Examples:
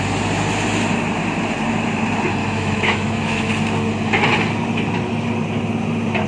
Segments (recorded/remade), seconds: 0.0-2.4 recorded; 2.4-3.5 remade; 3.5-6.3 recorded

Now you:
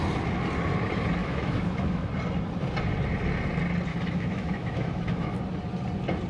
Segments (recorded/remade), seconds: 0.0-1.2 recorded; 1.2-2.1 remade; 2.1-3.9 recorded; 3.9-5.4 remade; 5.4-6.3 recorded

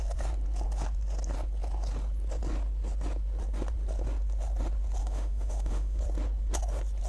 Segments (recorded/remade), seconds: 0.0-5.0 recorded; 5.0-6.0 remade; 6.0-7.1 recorded

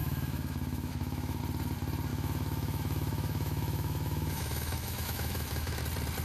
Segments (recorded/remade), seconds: 0.0-1.4 remade; 1.4-2.1 recorded; 2.1-5.8 remade; 5.8-6.2 recorded

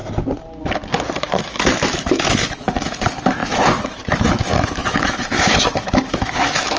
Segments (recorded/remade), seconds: 0.0-1.2 recorded; 1.2-6.8 remade